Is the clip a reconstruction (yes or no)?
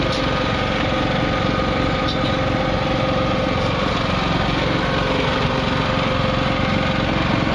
no